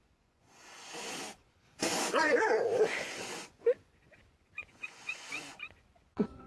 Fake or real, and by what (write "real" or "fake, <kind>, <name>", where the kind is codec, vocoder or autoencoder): fake, vocoder, Vocos